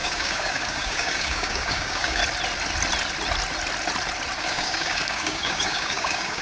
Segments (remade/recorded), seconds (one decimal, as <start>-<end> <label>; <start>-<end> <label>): 0.0-2.2 remade; 2.2-4.4 recorded; 4.4-6.4 remade

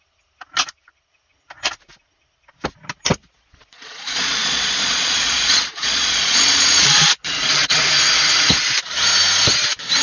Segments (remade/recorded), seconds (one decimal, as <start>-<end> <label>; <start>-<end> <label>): 0.0-3.2 recorded; 3.2-7.9 remade; 7.9-10.0 recorded

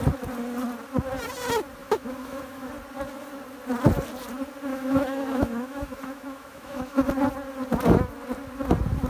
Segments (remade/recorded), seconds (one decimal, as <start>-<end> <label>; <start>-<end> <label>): 0.0-1.8 recorded; 1.8-2.7 remade; 2.7-4.7 recorded; 4.7-7.1 remade; 7.1-9.1 recorded

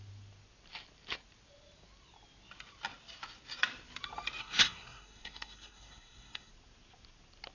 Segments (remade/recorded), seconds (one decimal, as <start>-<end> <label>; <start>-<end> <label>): 0.0-4.4 recorded; 4.4-6.5 remade; 6.5-7.5 recorded

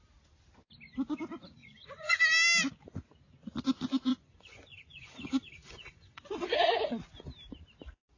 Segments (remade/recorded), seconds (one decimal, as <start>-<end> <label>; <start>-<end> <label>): 0.0-1.6 recorded; 1.6-2.2 remade; 2.2-4.1 recorded; 4.1-6.8 remade; 6.8-8.2 recorded

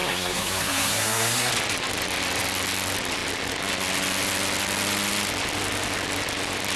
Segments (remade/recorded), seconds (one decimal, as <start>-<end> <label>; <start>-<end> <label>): 0.0-1.5 remade; 1.5-6.8 recorded